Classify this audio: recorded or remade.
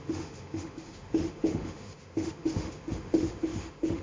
remade